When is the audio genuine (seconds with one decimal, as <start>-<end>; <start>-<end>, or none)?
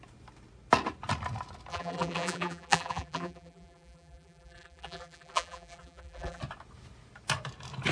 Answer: 0.0-1.7; 6.4-7.9